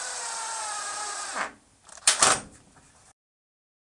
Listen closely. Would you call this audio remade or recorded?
remade